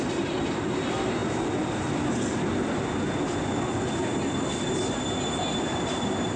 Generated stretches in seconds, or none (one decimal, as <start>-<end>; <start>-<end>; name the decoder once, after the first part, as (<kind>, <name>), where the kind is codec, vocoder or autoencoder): none